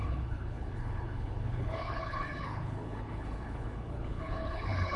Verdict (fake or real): fake